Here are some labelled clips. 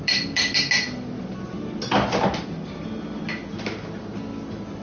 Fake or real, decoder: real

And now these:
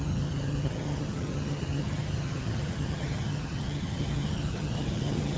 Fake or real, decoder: fake, vocoder, HiFi-GAN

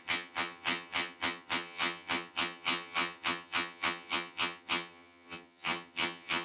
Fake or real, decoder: fake, vocoder, HiFi-GAN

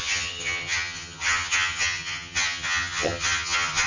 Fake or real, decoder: fake, vocoder, HiFi-GAN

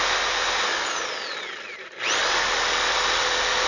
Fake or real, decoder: real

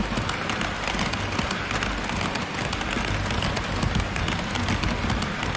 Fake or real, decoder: real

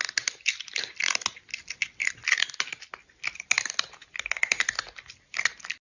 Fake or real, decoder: real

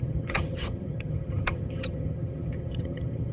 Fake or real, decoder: fake, vocoder, HiFi-GAN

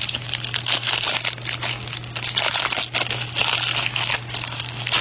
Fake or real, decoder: real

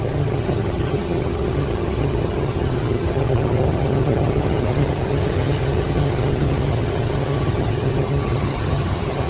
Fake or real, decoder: fake, vocoder, HiFi-GAN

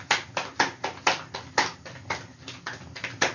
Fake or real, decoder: real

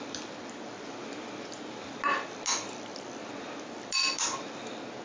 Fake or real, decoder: real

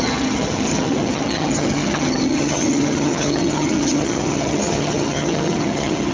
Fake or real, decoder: fake, vocoder, HiFi-GAN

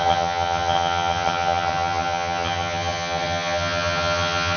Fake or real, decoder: fake, vocoder, HiFi-GAN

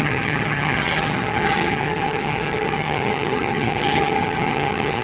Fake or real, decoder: fake, vocoder, HiFi-GAN